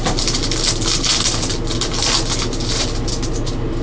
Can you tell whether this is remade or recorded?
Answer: recorded